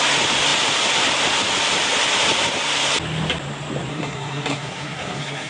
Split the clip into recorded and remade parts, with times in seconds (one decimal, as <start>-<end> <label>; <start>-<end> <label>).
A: 0.0-3.9 recorded; 3.9-5.5 remade